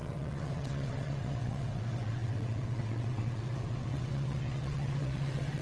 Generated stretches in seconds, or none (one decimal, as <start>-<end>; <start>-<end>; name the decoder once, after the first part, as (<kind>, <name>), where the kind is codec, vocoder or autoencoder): 0.0-5.6 (vocoder, WaveNeXt)